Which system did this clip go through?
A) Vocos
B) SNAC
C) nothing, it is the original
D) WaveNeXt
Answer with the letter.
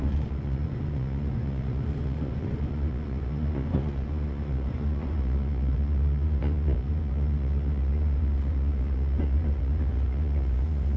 A